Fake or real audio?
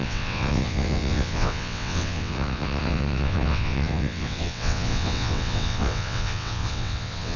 fake